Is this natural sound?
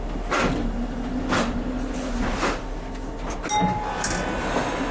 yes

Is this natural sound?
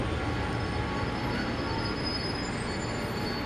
yes